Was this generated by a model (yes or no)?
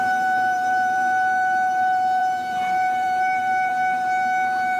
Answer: yes